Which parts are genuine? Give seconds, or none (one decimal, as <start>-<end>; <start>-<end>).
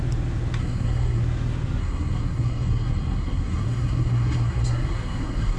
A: 0.0-0.6; 1.2-1.8